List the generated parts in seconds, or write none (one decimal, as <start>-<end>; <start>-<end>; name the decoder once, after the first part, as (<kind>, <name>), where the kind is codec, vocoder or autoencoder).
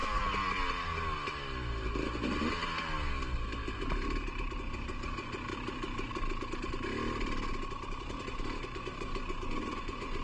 4.6-5.5 (vocoder, Vocos); 8.6-10.2